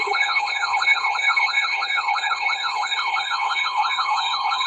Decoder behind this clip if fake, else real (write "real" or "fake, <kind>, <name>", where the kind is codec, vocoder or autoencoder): fake, codec, HILCodec